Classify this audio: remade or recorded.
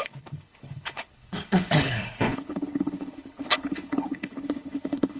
remade